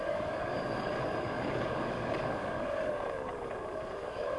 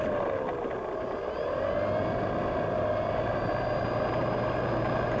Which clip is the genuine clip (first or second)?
second